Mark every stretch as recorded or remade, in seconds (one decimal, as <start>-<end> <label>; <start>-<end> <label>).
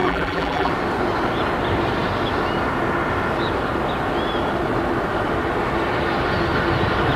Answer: 0.0-0.7 remade; 0.7-7.2 recorded